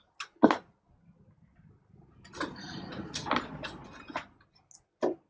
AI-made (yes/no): no